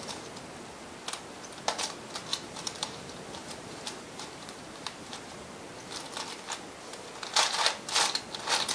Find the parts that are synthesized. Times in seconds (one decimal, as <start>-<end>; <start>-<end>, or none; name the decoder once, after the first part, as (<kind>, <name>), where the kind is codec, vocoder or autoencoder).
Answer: 2.3-5.4 (vocoder, BigVGAN v2)